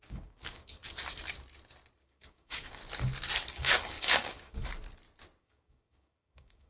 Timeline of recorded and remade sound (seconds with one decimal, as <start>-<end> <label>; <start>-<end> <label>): 0.0-0.8 remade; 0.8-2.0 recorded; 2.0-2.8 remade; 2.8-3.5 recorded; 3.5-4.6 remade; 4.6-5.4 recorded; 5.4-6.7 remade

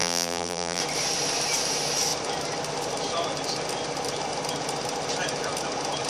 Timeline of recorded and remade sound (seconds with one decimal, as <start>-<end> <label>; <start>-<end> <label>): 0.0-0.8 remade; 0.8-6.1 recorded

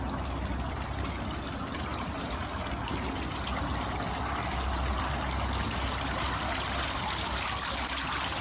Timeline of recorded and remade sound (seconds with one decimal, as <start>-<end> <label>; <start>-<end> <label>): 0.0-8.4 recorded

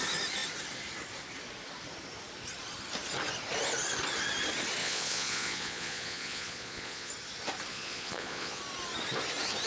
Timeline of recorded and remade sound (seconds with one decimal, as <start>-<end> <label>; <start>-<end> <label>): 0.0-4.8 recorded; 4.8-7.1 remade; 7.1-7.7 recorded; 7.7-8.6 remade; 8.6-9.7 recorded

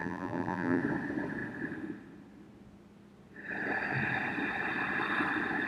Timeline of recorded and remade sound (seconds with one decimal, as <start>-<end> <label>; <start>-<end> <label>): 0.0-0.8 remade; 0.8-5.7 recorded